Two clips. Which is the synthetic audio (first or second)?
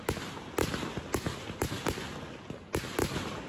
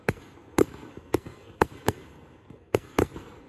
second